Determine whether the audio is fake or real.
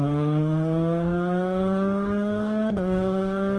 fake